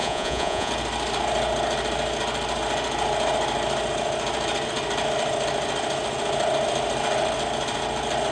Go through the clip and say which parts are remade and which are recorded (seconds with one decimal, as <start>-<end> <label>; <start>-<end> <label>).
0.0-0.7 remade; 0.7-8.3 recorded